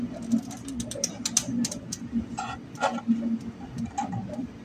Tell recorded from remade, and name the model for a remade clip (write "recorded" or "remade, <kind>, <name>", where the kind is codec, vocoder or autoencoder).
recorded